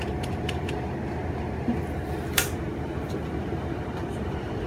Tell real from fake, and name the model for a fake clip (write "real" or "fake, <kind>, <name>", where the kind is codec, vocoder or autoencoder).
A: fake, vocoder, BigVGAN v2